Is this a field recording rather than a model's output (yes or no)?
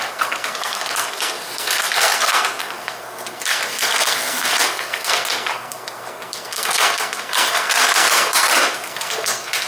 no